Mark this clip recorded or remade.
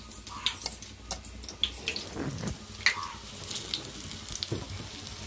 recorded